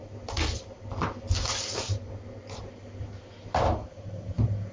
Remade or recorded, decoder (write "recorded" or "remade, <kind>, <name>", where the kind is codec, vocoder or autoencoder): recorded